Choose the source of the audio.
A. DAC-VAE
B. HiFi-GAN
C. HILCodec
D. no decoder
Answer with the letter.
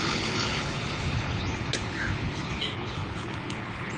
C